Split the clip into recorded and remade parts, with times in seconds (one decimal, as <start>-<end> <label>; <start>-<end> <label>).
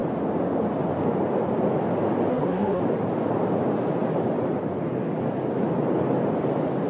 0.0-2.3 recorded; 2.3-2.8 remade; 2.8-6.9 recorded